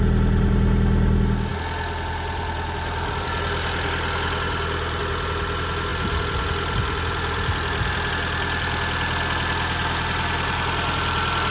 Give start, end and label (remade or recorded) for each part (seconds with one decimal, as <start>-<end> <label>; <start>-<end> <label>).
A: 0.0-11.5 recorded